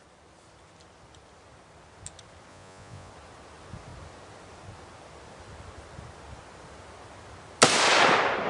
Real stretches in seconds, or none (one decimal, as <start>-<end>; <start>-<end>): 0.0-2.5; 3.1-8.5